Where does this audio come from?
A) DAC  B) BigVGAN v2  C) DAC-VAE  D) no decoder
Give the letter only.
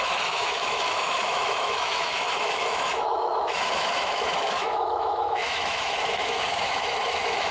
C